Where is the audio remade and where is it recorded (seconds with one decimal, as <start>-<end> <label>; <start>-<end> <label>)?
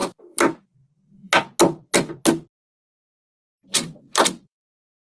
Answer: 0.0-1.3 remade; 1.3-3.7 recorded; 3.7-4.8 remade; 4.8-5.2 recorded